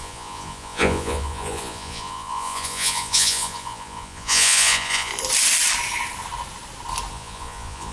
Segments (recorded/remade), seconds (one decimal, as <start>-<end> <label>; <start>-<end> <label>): 0.0-5.1 remade; 5.1-7.1 recorded; 7.1-7.9 remade